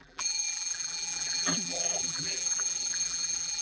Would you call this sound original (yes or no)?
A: no